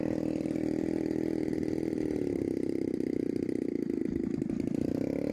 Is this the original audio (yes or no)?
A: yes